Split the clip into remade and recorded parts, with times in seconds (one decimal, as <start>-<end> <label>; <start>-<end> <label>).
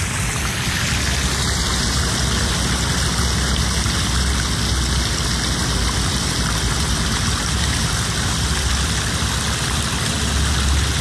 0.0-11.0 recorded